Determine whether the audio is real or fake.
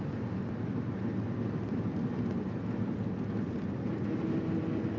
real